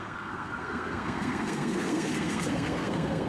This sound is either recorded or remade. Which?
remade